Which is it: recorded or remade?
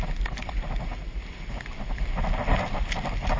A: recorded